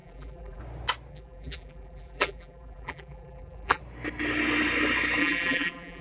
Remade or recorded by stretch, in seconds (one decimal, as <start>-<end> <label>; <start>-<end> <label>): 0.0-0.6 remade; 0.6-1.1 recorded; 1.1-3.8 remade; 3.8-5.2 recorded; 5.2-6.0 remade